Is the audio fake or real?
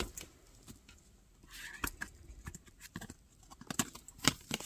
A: real